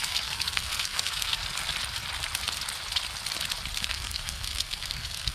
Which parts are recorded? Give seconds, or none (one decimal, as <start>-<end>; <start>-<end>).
1.4-3.8